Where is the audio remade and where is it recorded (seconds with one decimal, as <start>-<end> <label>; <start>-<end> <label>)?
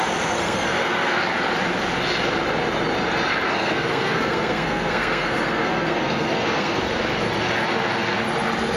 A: 0.0-0.4 recorded; 0.4-1.2 remade; 1.2-3.5 recorded; 3.5-6.8 remade; 6.8-8.8 recorded